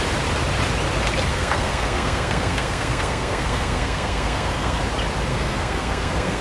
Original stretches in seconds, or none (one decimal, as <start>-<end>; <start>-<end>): 0.0-1.3; 4.8-5.3